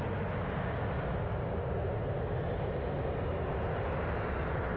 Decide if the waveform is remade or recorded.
recorded